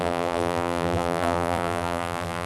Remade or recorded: remade